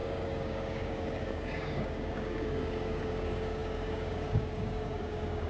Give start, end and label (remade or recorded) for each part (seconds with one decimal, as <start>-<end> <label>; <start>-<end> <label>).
0.0-5.5 remade